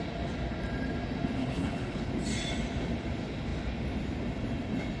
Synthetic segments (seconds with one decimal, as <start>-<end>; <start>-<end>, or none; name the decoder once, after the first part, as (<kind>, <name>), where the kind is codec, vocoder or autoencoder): 1.4-2.1 (codec, HILCodec)